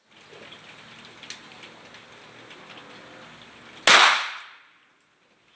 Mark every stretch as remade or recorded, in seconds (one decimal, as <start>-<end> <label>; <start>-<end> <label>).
0.0-5.6 recorded